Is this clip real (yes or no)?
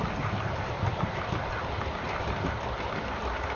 yes